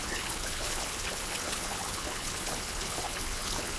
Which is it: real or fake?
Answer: fake